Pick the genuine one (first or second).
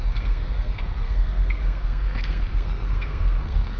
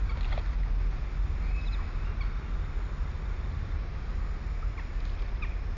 second